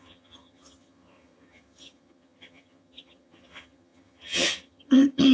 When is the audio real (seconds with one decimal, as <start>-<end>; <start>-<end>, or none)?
none